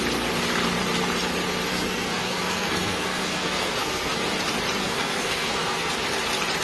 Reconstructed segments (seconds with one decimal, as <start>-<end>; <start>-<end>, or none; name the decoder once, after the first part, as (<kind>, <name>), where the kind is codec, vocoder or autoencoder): 1.7-4.1 (codec, SNAC); 4.8-5.9